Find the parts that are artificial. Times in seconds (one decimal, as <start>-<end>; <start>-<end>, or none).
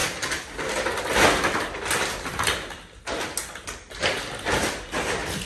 none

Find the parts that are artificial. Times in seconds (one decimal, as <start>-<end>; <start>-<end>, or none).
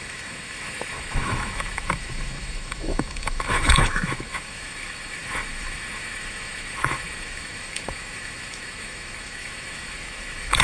0.0-10.6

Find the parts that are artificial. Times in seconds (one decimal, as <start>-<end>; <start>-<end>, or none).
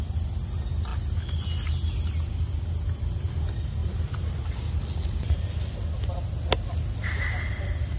none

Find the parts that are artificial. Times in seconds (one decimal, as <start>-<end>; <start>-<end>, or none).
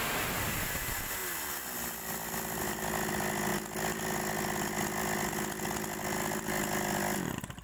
none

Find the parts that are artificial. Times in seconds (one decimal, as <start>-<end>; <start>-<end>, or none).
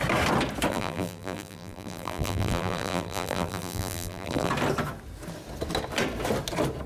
0.7-4.5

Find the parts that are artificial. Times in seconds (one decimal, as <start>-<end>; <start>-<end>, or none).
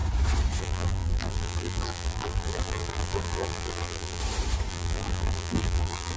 0.6-4.2; 4.7-6.2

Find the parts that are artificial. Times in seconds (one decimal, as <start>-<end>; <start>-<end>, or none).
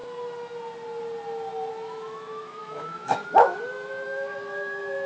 1.7-5.1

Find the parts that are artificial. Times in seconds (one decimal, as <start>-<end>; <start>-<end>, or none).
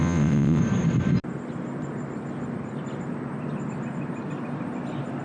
0.0-0.6